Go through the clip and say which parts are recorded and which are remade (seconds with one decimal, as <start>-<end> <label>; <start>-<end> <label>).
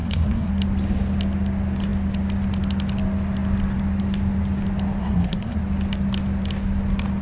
0.0-0.5 remade; 0.5-5.0 recorded; 5.0-5.6 remade; 5.6-7.2 recorded